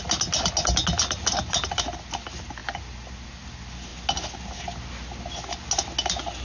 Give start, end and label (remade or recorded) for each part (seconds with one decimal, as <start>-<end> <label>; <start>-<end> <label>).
0.0-6.4 recorded